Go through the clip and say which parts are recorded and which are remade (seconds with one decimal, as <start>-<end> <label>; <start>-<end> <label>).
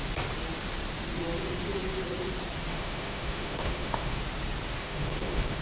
0.0-2.7 recorded; 2.7-4.2 remade; 4.2-4.8 recorded; 4.8-5.6 remade